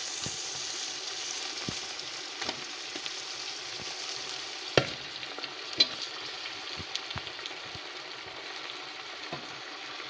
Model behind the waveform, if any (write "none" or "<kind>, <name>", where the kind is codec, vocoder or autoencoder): none